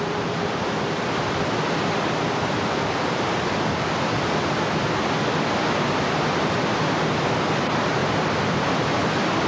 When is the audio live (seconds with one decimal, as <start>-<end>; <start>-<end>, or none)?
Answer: none